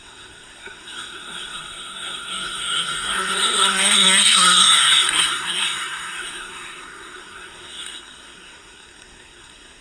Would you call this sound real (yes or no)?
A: no